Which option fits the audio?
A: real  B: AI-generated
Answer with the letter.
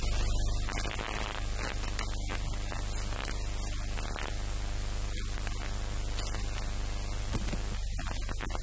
A